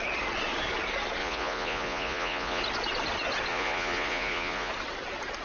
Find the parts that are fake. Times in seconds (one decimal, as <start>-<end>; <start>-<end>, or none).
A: 1.2-2.6; 3.5-4.7